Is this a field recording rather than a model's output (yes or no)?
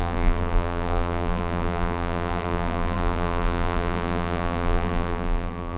no